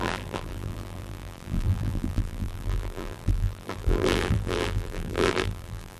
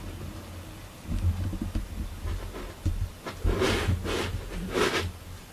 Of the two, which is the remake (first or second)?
first